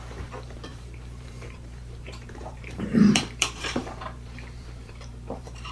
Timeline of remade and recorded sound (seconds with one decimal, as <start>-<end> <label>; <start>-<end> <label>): 0.0-5.7 remade